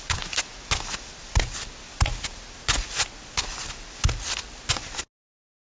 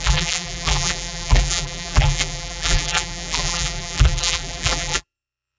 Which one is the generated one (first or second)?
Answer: second